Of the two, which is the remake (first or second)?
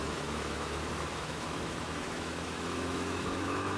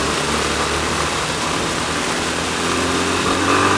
first